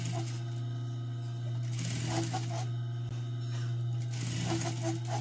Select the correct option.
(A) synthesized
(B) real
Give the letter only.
B